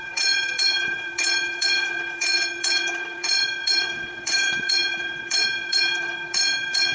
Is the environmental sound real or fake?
fake